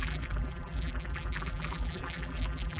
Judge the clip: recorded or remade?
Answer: remade